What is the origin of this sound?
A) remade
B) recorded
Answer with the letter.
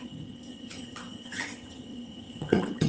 A